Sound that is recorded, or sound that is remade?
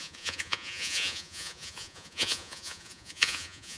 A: remade